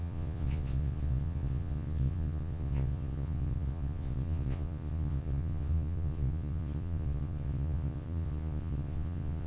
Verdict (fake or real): fake